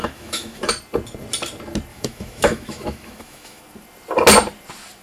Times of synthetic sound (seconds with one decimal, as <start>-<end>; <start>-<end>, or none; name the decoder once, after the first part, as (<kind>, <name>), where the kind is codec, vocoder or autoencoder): 0.0-0.7 (autoencoder, DAC-VAE); 1.9-3.6